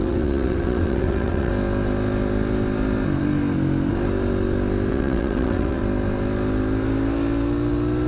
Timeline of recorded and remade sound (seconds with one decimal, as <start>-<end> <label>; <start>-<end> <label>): 0.0-1.5 remade; 1.5-4.9 recorded; 4.9-5.8 remade; 5.8-8.1 recorded